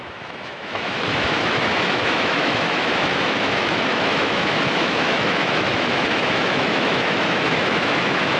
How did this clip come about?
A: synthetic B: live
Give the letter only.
A